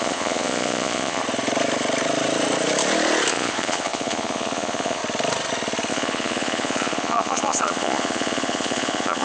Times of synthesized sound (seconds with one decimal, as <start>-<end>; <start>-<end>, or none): 0.0-1.2; 3.3-5.0; 5.9-9.2